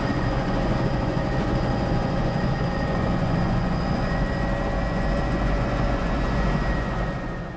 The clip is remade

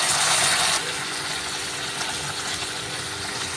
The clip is remade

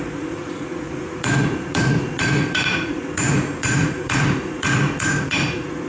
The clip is remade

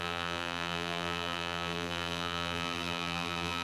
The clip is remade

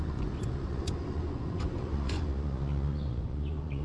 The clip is remade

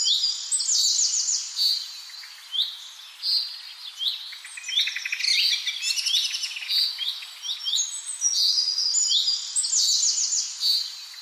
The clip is recorded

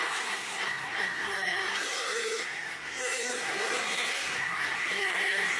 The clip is remade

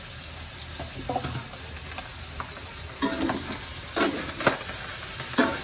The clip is recorded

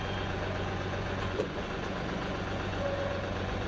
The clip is remade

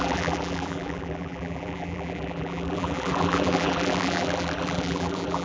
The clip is remade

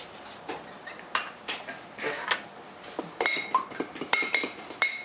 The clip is recorded